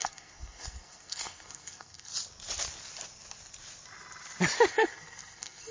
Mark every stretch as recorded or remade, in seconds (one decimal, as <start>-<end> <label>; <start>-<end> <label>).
0.0-2.1 remade; 2.1-4.7 recorded; 4.7-5.7 remade